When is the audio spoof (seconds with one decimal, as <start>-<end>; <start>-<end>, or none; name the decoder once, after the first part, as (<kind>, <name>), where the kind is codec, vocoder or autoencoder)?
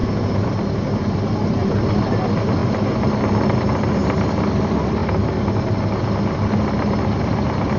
none